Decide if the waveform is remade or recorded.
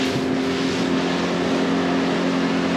recorded